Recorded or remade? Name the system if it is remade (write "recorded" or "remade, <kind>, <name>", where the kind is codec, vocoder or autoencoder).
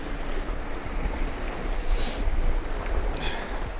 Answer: recorded